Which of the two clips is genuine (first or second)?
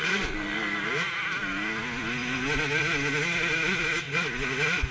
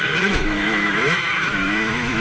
first